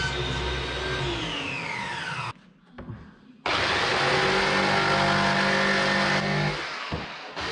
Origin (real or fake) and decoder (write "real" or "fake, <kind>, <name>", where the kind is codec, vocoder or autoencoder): real